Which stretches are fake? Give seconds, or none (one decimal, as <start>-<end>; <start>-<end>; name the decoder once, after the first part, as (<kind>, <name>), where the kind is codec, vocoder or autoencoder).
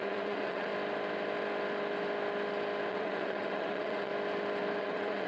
0.0-0.7 (vocoder, WaveNeXt); 2.9-4.1; 4.8-5.3